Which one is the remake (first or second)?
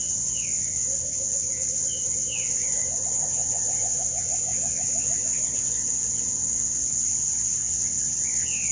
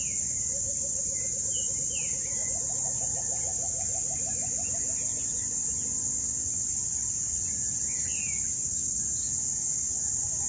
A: first